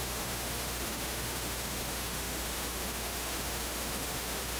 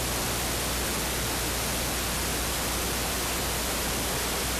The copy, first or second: first